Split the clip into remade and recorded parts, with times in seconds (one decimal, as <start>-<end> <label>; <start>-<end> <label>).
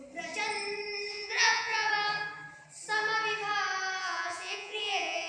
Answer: 0.0-1.1 recorded; 1.1-1.9 remade; 1.9-4.0 recorded; 4.0-5.3 remade